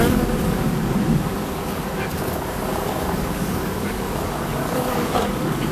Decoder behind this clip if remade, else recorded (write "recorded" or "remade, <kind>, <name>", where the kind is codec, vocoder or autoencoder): remade, codec, DAC